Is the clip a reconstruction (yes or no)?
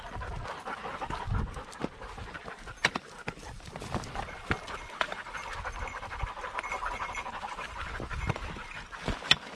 no